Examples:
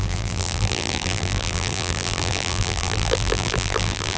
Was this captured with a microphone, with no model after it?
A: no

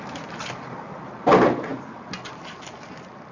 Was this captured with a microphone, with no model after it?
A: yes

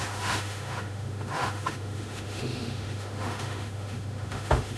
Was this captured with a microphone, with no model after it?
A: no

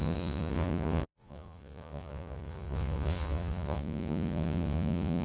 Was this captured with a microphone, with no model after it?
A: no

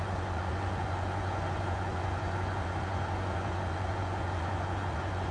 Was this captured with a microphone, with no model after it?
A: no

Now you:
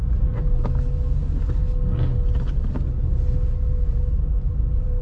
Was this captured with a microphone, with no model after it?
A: yes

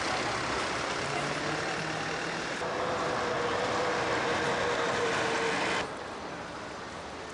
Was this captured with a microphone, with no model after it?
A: yes